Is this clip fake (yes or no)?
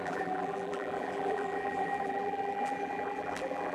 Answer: yes